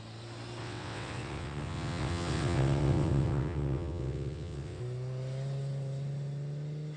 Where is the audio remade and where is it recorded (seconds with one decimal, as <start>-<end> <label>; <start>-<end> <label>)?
0.0-0.6 recorded; 0.6-4.8 remade; 4.8-7.0 recorded